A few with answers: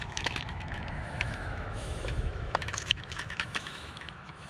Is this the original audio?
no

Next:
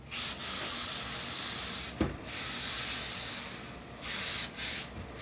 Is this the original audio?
yes